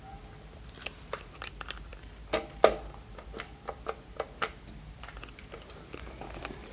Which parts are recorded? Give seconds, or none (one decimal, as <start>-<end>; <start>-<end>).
0.0-6.7